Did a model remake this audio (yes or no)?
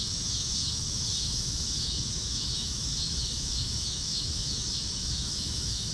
yes